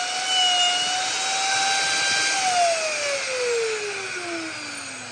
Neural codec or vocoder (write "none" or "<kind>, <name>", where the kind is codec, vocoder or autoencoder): none